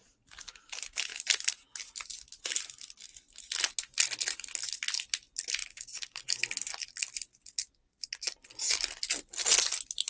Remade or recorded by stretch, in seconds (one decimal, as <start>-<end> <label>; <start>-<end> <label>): 0.0-5.6 recorded; 5.6-6.2 remade; 6.2-10.1 recorded